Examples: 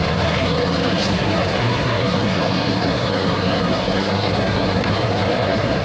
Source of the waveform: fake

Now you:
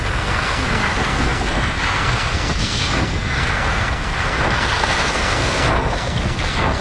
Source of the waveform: fake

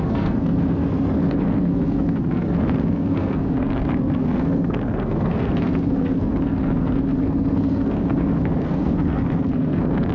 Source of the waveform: fake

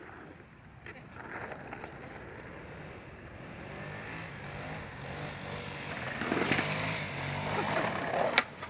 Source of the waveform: real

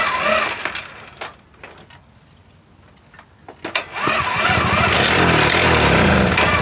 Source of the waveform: real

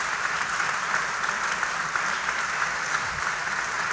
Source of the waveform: real